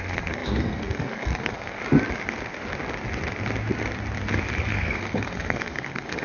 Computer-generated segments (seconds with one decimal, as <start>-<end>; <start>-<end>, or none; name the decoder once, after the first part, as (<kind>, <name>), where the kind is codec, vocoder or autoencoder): 0.0-1.8 (codec, SNAC); 4.6-6.2